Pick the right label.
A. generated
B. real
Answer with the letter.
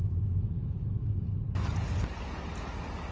B